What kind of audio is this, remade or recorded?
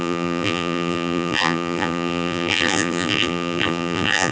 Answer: remade